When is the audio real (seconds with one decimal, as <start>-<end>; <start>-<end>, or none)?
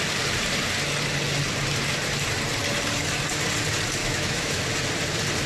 0.0-4.0; 4.6-5.5